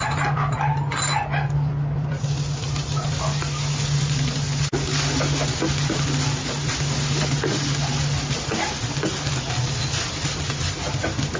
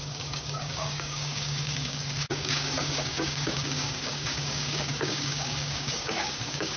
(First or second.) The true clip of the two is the first